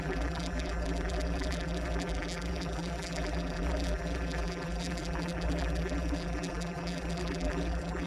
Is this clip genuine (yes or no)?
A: no